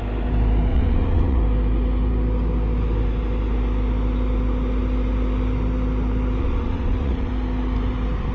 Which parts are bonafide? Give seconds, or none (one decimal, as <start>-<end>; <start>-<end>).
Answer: 0.0-0.7; 1.4-6.4; 7.3-8.3

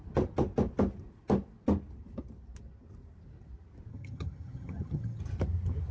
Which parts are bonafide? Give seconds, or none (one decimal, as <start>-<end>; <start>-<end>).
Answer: 0.0-3.9; 5.2-5.9

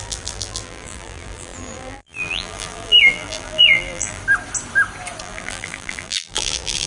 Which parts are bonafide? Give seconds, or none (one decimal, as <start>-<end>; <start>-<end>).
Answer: 4.2-5.2

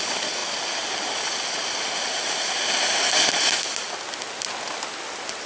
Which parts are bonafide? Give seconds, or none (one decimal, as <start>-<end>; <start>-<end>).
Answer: 0.0-5.5

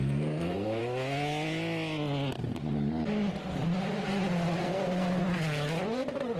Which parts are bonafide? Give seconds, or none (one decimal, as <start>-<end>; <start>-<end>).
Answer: 0.8-4.6; 5.2-6.4

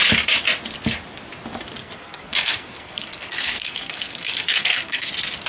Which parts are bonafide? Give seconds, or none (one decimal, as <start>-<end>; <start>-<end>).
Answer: 0.0-1.8; 5.1-5.5